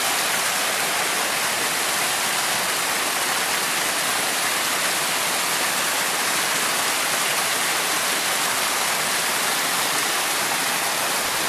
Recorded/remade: recorded